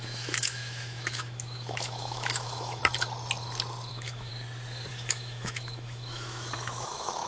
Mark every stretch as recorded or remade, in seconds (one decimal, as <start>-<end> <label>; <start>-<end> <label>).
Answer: 0.0-2.8 remade; 2.8-3.9 recorded; 3.9-4.3 remade; 4.3-4.9 recorded; 4.9-7.3 remade